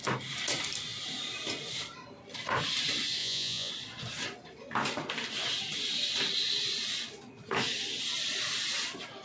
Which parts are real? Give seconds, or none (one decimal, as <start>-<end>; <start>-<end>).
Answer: 0.0-3.2; 3.7-9.2